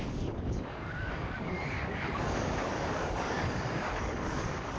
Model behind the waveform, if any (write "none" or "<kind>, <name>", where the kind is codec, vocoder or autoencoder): codec, DAC